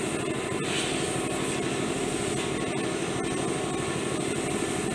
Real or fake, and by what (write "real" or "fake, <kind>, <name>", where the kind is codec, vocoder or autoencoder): real